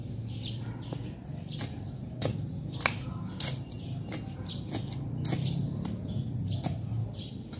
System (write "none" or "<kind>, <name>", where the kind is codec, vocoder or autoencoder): none